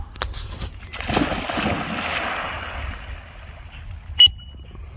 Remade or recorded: recorded